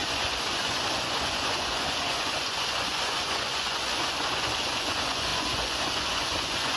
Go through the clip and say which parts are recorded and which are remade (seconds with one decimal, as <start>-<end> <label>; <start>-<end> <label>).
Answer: 0.0-6.8 remade